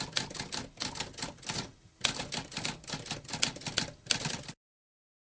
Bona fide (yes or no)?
yes